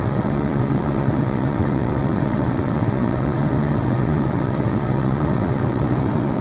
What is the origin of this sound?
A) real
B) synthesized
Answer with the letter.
B